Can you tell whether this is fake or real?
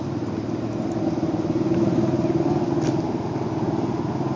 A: real